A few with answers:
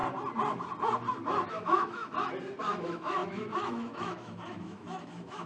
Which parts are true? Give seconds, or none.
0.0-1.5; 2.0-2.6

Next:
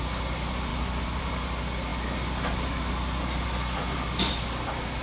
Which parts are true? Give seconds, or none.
0.0-5.0